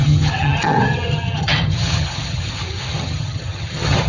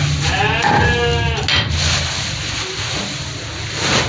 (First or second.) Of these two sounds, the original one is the second